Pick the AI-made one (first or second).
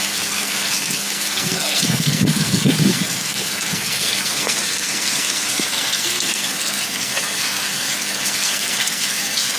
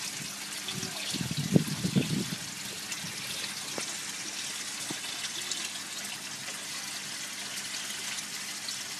first